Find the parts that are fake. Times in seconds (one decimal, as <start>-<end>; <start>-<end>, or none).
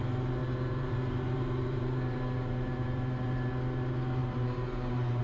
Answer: 0.4-3.5; 4.2-5.2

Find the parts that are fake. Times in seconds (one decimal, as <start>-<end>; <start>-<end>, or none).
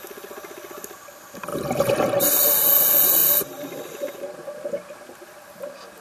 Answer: none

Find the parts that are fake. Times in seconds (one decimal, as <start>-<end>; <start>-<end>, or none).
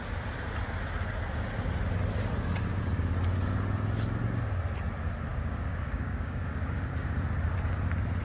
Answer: 5.3-6.9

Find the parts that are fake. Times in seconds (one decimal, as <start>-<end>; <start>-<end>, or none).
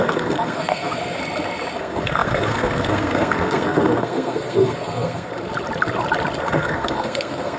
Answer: 0.0-1.2; 1.8-5.3; 6.4-7.6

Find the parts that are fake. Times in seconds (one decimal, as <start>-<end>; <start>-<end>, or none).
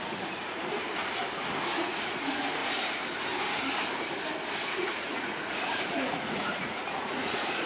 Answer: 0.0-0.6; 1.8-2.6; 4.7-7.7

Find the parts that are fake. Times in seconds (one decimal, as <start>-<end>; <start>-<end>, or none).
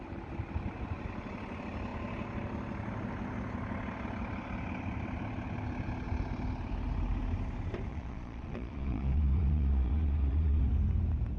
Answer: 7.9-10.6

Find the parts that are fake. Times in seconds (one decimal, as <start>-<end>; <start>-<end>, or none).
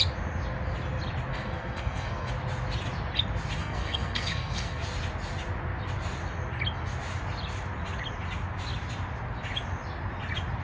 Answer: 1.3-2.3; 3.6-4.8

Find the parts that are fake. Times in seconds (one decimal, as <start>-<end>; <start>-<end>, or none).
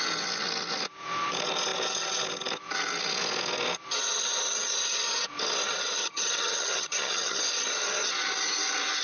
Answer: 6.0-7.4